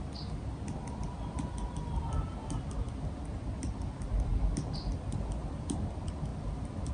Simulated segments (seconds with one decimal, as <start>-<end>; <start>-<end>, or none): none